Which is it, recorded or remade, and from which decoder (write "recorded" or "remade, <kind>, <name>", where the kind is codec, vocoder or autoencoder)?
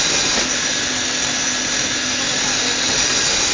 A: recorded